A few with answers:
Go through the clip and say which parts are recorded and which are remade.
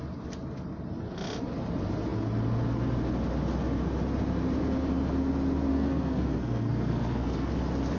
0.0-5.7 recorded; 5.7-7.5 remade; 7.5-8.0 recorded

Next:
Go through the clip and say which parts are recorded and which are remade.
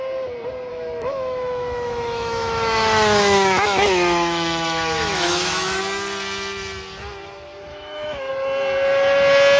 0.0-0.7 recorded; 0.7-5.8 remade; 5.8-7.7 recorded; 7.7-8.3 remade; 8.3-9.6 recorded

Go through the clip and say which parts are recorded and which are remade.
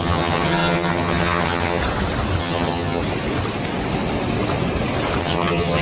0.0-1.8 remade; 1.8-2.4 recorded; 2.4-3.0 remade; 3.0-5.2 recorded; 5.2-5.8 remade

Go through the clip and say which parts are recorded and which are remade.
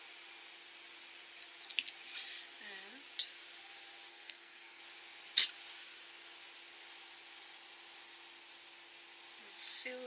0.0-4.1 recorded; 4.1-4.8 remade; 4.8-10.1 recorded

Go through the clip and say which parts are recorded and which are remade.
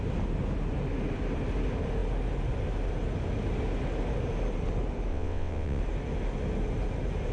0.0-5.1 recorded; 5.1-5.8 remade; 5.8-7.3 recorded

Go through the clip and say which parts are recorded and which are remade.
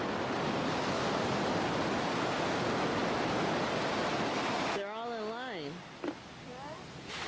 0.0-7.3 recorded